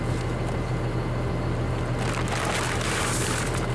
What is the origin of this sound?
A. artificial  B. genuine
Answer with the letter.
B